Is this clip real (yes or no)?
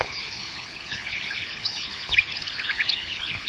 no